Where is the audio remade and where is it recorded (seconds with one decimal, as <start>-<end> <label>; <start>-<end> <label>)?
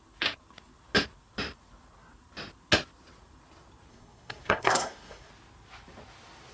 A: 0.0-3.9 recorded; 3.9-5.3 remade; 5.3-6.5 recorded